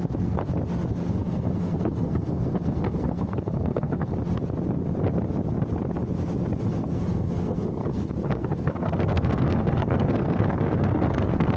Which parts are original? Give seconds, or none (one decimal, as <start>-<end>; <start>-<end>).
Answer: 0.4-0.9; 4.1-6.7